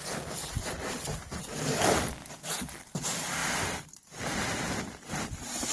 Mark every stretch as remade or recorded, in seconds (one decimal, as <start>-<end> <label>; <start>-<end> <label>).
0.0-5.7 recorded